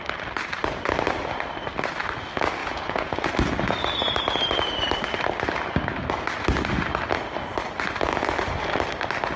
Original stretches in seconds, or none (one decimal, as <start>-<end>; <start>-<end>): 0.0-2.6; 3.3-9.4